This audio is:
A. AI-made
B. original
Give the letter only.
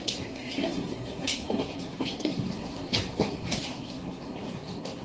A